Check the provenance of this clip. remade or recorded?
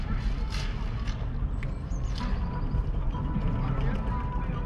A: recorded